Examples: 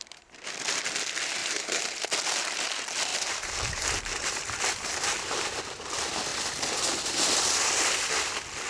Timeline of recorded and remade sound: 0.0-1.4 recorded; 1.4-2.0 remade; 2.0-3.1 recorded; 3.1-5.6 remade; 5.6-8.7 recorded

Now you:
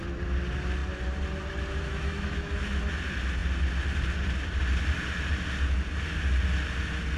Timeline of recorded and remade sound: 0.0-1.9 recorded; 1.9-2.6 remade; 2.6-7.2 recorded